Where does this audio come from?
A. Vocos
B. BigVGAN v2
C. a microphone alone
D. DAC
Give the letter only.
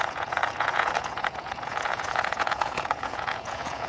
A